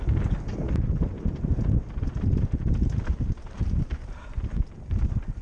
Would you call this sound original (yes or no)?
yes